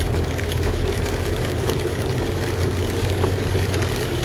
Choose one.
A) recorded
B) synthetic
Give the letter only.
B